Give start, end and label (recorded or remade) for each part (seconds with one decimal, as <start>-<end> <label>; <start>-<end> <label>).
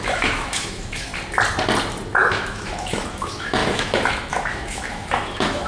0.0-1.1 remade; 1.1-2.3 recorded; 2.3-5.7 remade